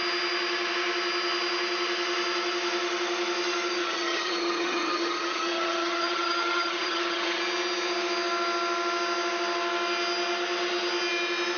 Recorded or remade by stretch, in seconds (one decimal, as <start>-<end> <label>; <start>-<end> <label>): 0.0-3.8 recorded; 3.8-7.4 remade; 7.4-11.6 recorded